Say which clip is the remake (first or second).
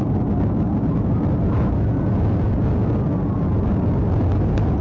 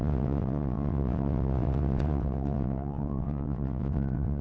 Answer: second